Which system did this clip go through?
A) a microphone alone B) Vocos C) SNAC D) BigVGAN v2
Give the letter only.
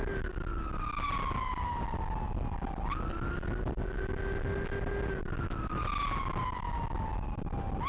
A